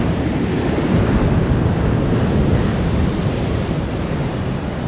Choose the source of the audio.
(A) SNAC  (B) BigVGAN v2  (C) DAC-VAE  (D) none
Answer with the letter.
B